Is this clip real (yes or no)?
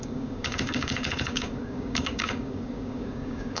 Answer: no